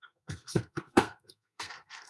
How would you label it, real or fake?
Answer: fake